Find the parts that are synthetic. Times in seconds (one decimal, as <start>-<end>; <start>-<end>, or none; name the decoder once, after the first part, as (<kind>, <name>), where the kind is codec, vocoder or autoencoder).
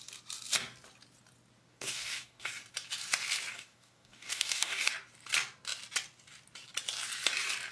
1.7-2.5 (codec, DAC); 3.5-4.9